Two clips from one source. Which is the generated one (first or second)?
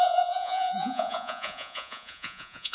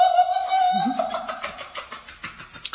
first